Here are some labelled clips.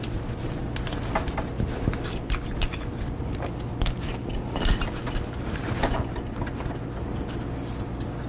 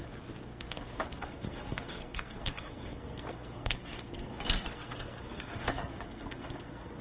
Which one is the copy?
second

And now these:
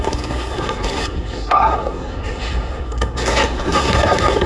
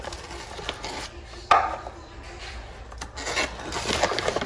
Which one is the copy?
first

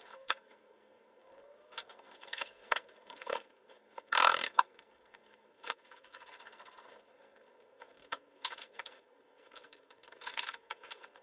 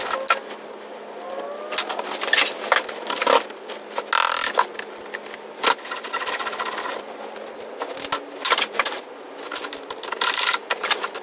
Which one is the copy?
first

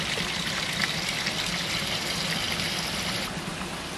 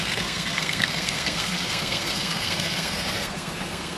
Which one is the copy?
second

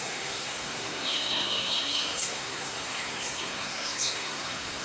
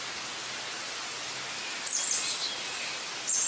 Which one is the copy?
first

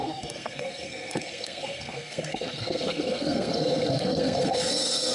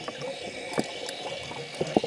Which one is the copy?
first